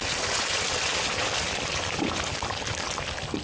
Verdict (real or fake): real